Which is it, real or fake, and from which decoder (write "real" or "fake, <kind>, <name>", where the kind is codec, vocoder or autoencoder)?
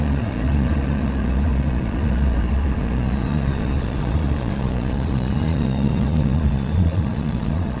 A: fake, vocoder, Vocos